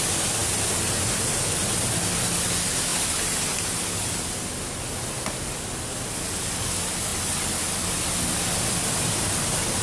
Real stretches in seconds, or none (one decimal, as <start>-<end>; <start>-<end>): 0.0-9.8